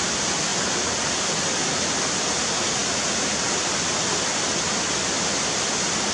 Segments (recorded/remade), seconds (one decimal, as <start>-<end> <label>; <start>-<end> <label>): 0.0-6.1 recorded